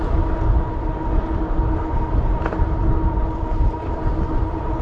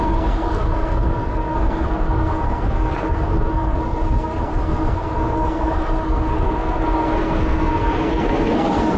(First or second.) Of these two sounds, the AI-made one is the second